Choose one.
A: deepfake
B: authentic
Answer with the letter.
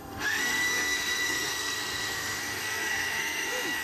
A